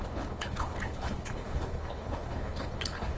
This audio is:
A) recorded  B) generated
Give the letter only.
B